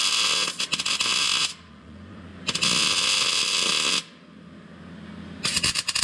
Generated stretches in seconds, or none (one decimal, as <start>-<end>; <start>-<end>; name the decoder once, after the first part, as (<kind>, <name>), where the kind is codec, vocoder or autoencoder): 1.7-2.3 (vocoder, Vocos)